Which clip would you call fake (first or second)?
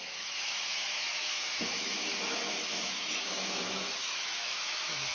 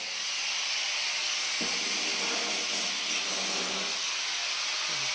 first